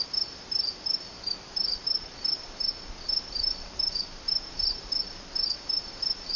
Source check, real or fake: real